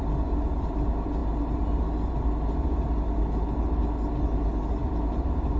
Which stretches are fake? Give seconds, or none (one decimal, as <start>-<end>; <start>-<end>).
0.0-1.2; 4.6-5.6